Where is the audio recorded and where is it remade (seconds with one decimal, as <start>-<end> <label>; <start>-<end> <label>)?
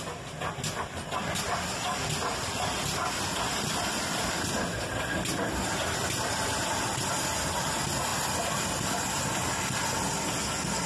0.0-10.9 recorded